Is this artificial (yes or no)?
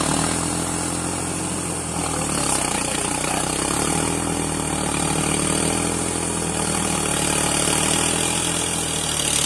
no